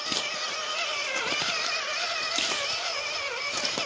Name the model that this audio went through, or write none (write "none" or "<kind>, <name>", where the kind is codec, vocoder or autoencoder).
vocoder, BigVGAN v2